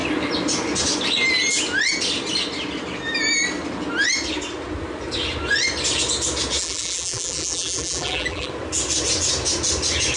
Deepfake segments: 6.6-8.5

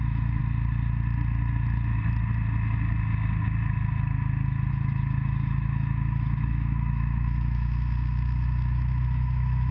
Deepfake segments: 0.0-0.4; 4.7-9.7

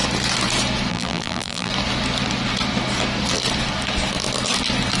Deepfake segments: 0.9-1.7

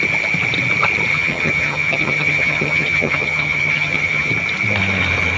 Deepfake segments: 1.1-4.3

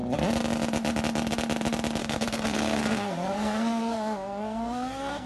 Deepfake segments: 2.0-5.3

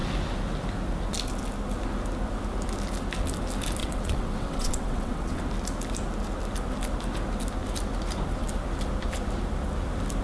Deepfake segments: 3.8-5.4